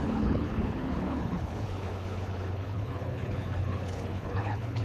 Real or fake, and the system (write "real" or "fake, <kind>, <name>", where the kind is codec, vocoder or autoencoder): fake, codec, HILCodec